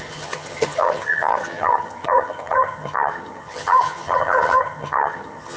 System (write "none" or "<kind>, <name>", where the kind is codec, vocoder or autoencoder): vocoder, HiFi-GAN